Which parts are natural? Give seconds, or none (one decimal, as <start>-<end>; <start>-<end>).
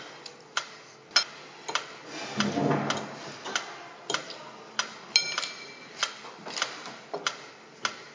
0.0-8.1